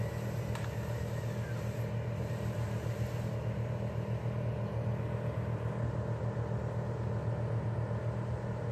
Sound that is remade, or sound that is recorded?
recorded